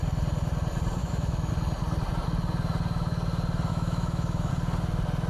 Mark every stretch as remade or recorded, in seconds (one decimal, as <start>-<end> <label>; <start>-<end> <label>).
0.0-1.0 recorded; 1.0-1.5 remade; 1.5-3.7 recorded; 3.7-4.5 remade; 4.5-5.3 recorded